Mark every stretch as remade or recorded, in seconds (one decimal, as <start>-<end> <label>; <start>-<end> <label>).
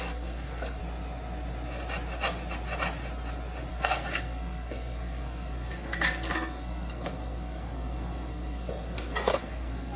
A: 0.0-0.8 remade; 0.8-3.7 recorded; 3.7-10.0 remade